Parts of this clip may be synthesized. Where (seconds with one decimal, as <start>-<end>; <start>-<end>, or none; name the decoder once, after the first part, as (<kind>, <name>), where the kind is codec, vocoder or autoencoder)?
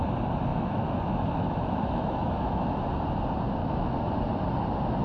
0.5-2.8 (autoencoder, DAC-VAE); 3.6-4.1